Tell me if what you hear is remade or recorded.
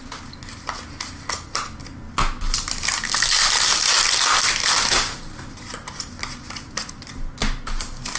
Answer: recorded